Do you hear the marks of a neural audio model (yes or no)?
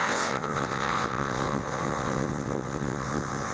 yes